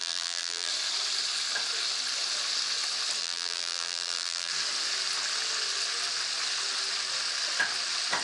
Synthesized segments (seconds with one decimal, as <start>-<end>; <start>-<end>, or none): 0.0-0.7; 3.2-4.5